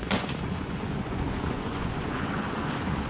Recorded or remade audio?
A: remade